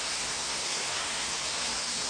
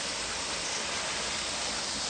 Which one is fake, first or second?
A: first